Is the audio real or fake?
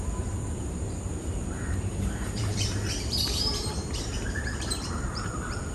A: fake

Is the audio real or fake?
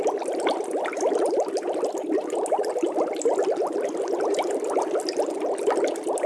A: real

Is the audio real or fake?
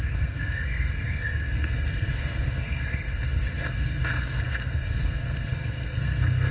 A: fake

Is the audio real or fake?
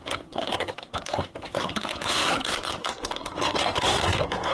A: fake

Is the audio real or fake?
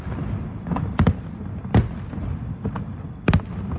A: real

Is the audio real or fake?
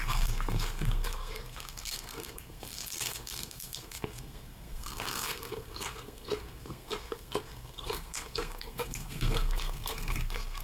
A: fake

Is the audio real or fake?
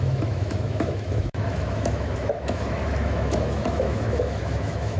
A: fake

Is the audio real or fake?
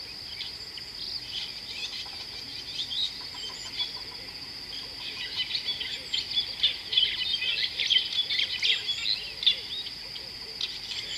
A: real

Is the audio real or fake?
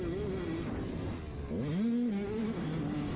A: real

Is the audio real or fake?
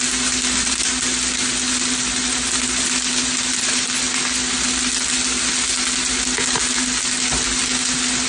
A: real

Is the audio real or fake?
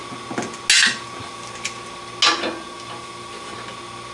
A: real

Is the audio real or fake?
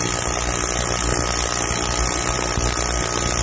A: real